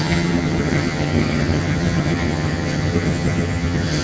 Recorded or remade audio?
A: remade